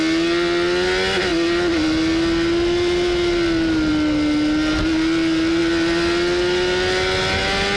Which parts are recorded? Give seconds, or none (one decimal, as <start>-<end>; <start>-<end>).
0.0-7.8